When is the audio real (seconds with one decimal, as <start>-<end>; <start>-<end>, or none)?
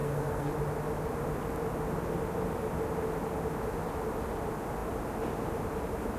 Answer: 0.5-6.2